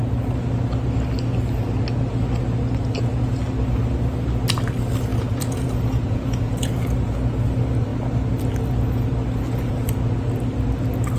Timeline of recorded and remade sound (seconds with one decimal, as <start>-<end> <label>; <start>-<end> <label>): 0.0-5.1 recorded; 5.1-6.7 remade; 6.7-11.2 recorded